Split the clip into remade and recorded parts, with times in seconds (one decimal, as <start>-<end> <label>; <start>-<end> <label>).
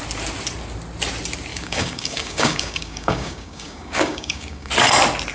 0.0-1.5 recorded; 1.5-4.7 remade; 4.7-5.3 recorded